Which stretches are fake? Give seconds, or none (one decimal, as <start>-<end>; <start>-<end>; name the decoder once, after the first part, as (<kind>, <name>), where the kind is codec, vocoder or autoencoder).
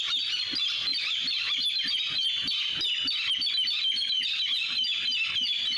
none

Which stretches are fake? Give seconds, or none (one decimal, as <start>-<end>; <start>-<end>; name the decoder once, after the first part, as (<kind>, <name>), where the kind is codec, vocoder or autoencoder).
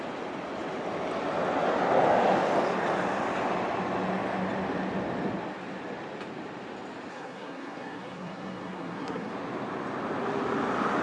7.1-9.3 (codec, SNAC)